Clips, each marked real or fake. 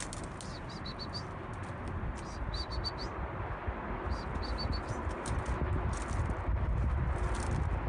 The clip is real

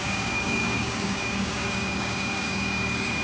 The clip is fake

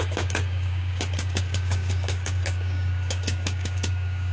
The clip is fake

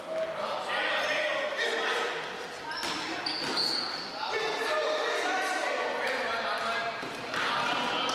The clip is real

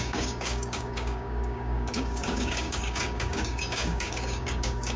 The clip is fake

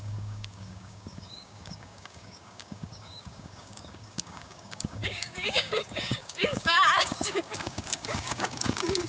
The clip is fake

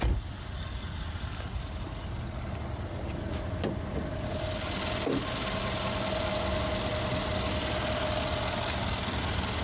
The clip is real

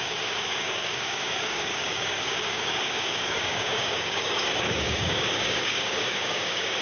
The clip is fake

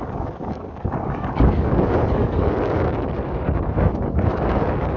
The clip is fake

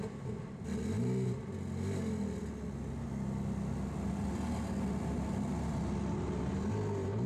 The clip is real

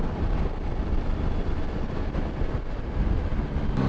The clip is real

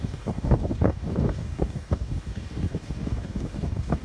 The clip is fake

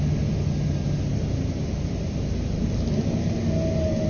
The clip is real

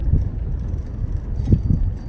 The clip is real